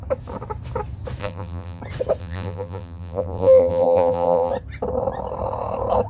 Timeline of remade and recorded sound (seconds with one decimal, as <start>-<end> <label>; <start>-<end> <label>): 0.0-1.2 recorded; 1.2-1.8 remade; 1.8-2.2 recorded; 2.2-4.5 remade; 4.5-6.1 recorded